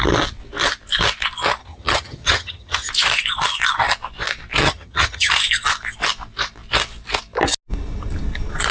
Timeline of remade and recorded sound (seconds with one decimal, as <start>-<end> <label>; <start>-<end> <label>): 0.0-1.6 recorded; 1.6-2.9 remade; 2.9-4.6 recorded; 4.6-5.3 remade; 5.3-8.7 recorded